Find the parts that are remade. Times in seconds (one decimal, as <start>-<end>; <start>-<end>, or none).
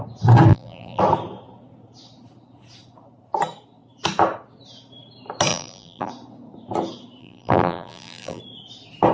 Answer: 0.5-1.0; 5.5-6.1; 7.2-8.4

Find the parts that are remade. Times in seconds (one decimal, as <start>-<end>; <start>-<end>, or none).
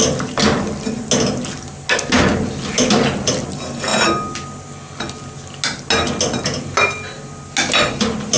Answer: none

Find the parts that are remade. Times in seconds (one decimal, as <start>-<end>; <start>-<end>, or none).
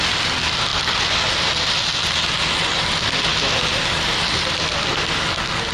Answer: 0.7-1.3; 3.3-5.2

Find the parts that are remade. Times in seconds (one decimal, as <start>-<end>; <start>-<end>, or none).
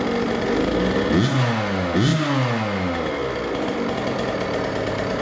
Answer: none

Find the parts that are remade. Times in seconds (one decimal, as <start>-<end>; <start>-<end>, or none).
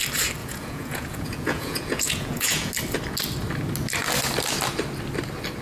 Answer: 0.4-2.7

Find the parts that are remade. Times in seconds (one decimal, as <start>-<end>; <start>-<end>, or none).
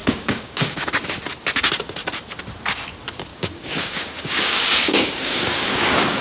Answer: 0.0-0.9; 3.3-6.2